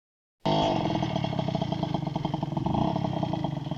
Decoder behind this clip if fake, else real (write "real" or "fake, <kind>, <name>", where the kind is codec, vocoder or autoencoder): real